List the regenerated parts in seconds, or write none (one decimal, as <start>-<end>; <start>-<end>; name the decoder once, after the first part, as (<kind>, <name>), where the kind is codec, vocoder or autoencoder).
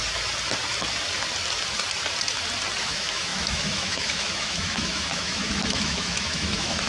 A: 2.8-6.9 (autoencoder, DAC-VAE)